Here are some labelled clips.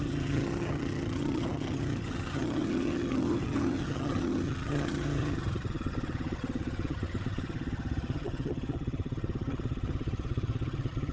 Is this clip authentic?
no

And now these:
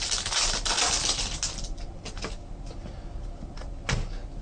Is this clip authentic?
yes